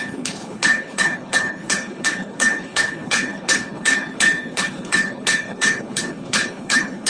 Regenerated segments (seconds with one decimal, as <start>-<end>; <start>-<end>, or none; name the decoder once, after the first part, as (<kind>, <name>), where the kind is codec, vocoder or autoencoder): 0.0-7.1 (codec, HILCodec)